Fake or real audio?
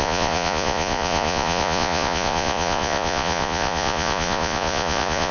fake